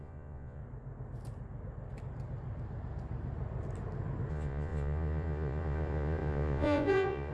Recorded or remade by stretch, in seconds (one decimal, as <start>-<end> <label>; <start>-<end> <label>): 0.0-0.6 remade; 0.6-4.3 recorded; 4.3-7.3 remade